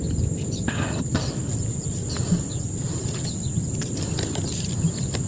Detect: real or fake real